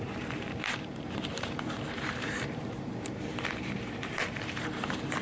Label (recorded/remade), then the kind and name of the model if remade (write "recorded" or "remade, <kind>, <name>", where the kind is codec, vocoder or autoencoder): remade, vocoder, BigVGAN v2